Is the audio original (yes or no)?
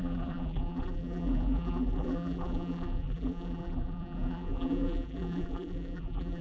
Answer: no